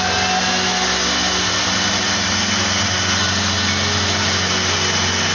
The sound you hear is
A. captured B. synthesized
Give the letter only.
A